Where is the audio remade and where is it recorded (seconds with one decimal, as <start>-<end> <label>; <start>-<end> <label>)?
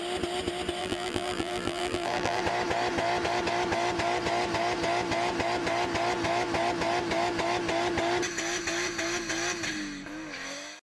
0.0-0.8 recorded; 0.8-2.4 remade; 2.4-10.9 recorded